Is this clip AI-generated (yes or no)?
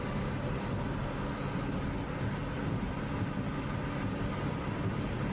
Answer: no